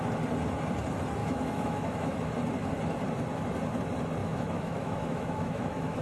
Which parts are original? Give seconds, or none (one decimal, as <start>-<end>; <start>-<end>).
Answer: 0.0-1.2; 2.3-4.2